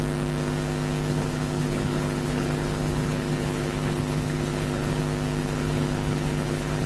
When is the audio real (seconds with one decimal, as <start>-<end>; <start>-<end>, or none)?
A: 0.0-1.1; 5.0-5.4